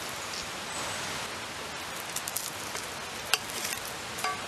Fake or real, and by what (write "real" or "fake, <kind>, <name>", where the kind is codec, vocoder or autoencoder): real